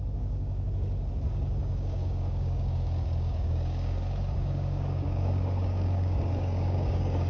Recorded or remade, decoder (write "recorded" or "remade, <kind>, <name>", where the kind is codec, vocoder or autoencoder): remade, codec, DAC